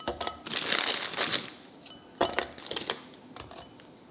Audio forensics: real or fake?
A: real